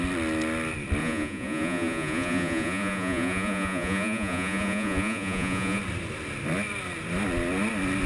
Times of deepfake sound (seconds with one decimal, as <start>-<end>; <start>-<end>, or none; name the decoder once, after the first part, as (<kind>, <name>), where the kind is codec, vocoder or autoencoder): 1.0-5.8 (vocoder, Vocos)